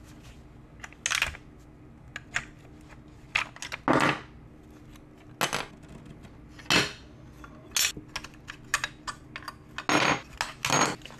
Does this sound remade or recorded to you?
recorded